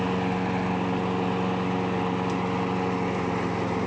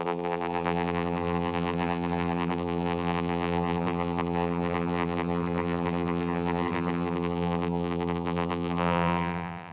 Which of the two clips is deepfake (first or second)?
second